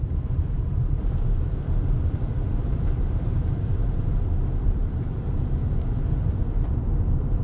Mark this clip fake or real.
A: fake